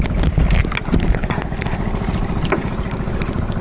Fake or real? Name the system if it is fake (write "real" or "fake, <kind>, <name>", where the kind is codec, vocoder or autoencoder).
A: real